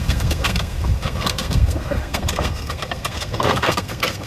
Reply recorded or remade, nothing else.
remade